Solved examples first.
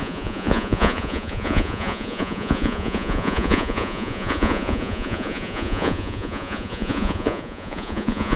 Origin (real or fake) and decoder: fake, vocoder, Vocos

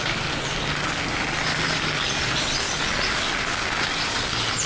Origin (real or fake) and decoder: real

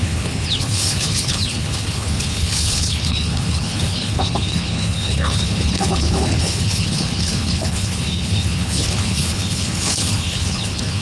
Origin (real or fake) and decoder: fake, codec, HILCodec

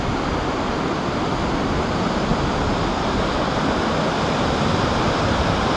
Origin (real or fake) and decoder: real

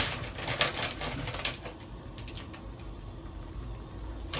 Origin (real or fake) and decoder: real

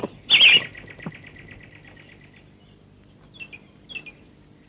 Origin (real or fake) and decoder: real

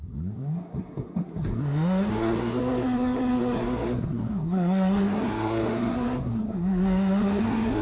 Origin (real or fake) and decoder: fake, codec, SNAC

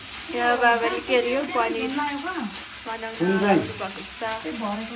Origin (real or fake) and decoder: real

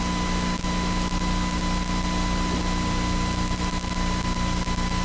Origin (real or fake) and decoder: real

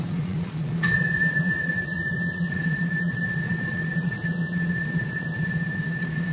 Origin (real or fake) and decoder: fake, vocoder, Vocos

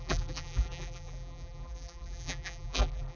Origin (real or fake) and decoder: fake, vocoder, BigVGAN v2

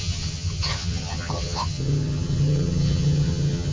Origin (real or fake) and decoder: fake, vocoder, HiFi-GAN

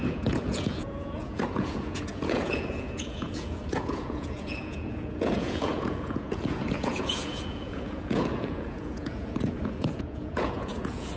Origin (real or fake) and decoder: fake, vocoder, Vocos